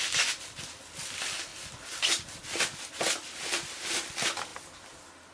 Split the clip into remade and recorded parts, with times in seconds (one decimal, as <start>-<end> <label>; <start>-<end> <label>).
0.0-5.3 recorded